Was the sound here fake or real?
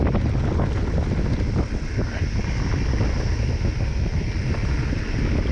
real